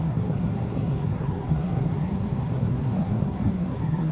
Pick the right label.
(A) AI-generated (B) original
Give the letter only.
A